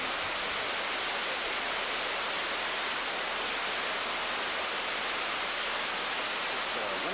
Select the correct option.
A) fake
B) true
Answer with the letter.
B